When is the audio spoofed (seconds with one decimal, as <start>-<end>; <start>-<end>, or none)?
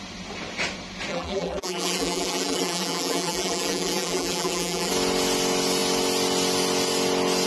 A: 1.1-4.9